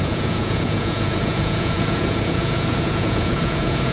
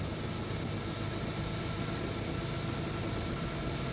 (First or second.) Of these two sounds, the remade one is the first